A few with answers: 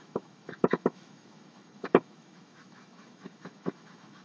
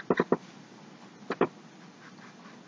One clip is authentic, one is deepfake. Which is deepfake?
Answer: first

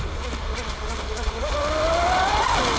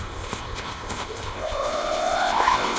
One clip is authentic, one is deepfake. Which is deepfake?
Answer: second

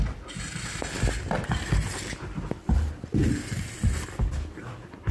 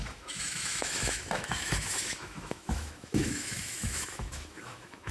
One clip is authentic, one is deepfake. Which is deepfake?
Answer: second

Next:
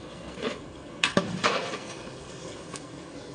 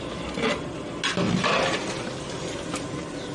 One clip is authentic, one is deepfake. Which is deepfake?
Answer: first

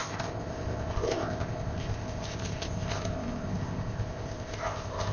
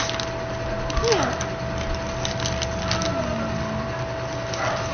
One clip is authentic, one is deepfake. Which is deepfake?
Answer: first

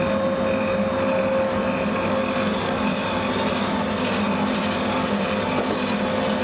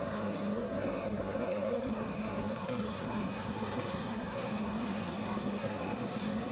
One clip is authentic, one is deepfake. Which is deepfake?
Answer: second